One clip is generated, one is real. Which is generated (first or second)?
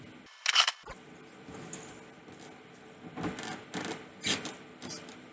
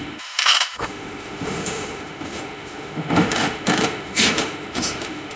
second